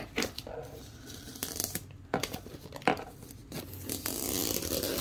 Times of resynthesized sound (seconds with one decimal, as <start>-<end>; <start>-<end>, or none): none

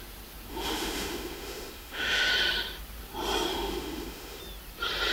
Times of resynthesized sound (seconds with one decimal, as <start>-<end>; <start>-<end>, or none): 0.5-2.3; 3.5-4.4

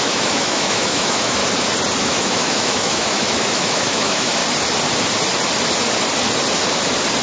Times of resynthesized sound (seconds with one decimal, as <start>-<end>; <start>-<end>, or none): 0.0-1.4; 2.0-4.4

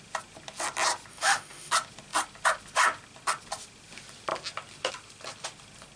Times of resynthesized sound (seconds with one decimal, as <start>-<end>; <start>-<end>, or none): 1.1-1.7

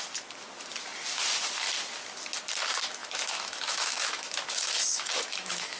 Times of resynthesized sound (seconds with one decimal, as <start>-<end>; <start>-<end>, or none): 3.0-5.8

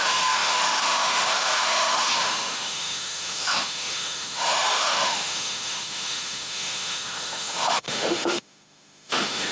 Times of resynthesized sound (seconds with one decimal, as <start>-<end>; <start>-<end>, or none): 0.0-9.5